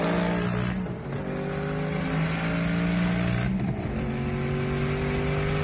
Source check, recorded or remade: recorded